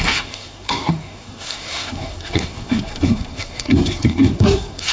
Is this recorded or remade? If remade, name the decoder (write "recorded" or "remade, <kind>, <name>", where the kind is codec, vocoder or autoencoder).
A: remade, codec, SNAC